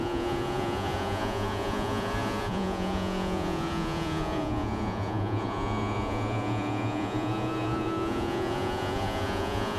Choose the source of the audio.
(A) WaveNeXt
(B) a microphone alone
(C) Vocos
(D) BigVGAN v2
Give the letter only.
C